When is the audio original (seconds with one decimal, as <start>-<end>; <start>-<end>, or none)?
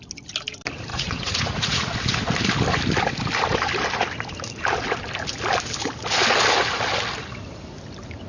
0.0-0.9; 2.0-8.3